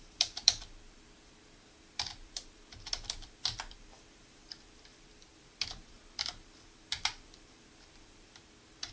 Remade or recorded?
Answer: remade